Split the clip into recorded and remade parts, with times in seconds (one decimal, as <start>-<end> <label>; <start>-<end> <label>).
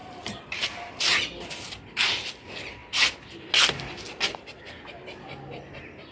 0.0-1.0 remade; 1.0-2.8 recorded; 2.8-3.5 remade; 3.5-6.1 recorded